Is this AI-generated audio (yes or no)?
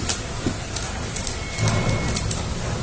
no